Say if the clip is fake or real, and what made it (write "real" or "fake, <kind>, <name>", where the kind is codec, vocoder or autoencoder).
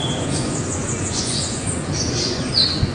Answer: fake, vocoder, Vocos